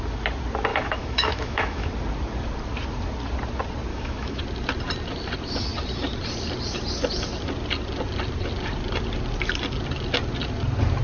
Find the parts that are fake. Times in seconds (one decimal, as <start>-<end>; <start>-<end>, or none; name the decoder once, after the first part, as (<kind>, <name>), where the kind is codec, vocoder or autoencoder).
0.7-1.9 (autoencoder, DAC-VAE); 3.9-4.4